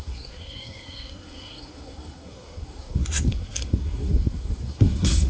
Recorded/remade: remade